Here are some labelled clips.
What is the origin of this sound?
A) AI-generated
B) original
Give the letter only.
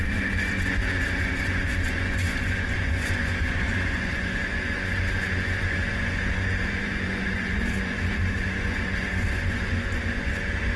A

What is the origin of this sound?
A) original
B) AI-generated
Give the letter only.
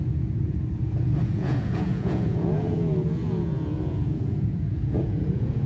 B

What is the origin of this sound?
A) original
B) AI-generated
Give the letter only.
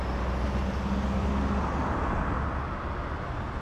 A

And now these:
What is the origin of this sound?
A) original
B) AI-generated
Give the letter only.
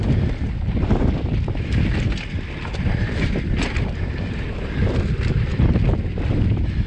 A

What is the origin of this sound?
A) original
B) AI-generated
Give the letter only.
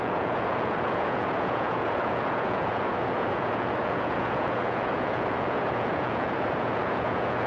B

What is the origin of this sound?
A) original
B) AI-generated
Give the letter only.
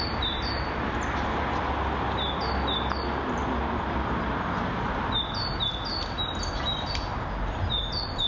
A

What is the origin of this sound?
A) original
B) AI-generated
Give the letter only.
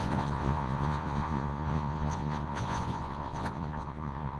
B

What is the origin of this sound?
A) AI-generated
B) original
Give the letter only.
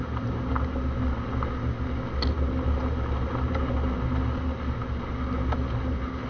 B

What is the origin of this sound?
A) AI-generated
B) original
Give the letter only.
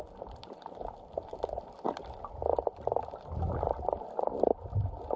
B